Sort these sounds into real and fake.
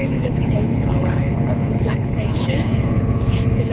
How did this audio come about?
fake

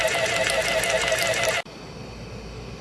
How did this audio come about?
real